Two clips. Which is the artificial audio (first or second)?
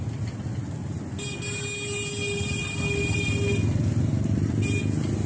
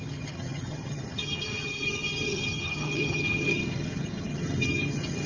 second